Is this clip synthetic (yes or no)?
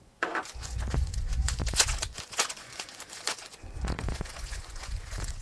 yes